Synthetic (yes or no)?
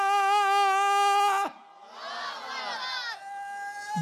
no